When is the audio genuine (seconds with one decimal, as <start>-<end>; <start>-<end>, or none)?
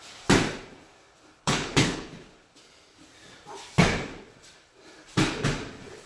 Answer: 0.0-1.4; 2.1-6.1